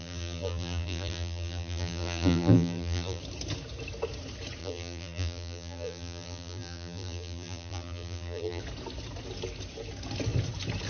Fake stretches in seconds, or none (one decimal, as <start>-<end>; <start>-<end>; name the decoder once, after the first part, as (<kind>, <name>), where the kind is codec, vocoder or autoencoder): 0.0-3.2 (vocoder, BigVGAN v2); 4.6-8.6